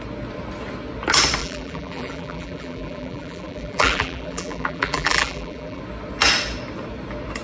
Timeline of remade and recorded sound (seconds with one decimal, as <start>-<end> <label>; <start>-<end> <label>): 0.0-1.4 recorded; 1.4-5.8 remade; 5.8-7.4 recorded